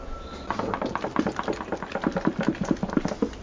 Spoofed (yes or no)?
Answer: no